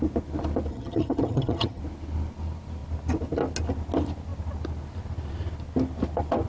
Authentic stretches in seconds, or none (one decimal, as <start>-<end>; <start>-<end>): 0.0-0.7; 1.8-6.5